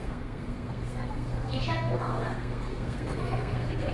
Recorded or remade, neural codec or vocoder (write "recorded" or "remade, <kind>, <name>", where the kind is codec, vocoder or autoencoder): remade, codec, SNAC